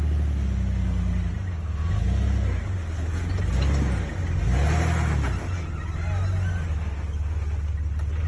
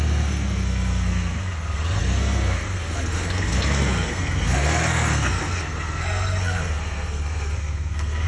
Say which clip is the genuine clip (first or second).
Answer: first